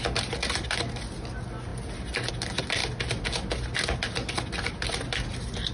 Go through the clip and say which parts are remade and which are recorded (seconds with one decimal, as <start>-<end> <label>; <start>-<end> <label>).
0.0-5.7 recorded